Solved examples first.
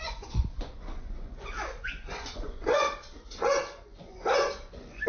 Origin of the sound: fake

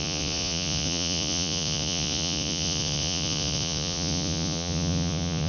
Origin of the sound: fake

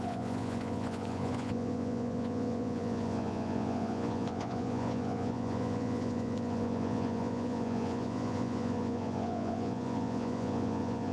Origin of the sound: fake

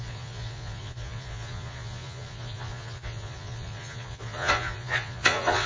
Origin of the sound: fake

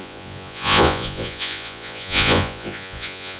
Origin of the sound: fake